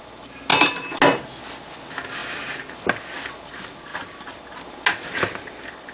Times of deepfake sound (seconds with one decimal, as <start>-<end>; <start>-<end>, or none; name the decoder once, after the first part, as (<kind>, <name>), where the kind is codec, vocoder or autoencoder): 3.9-4.4 (vocoder, BigVGAN v2)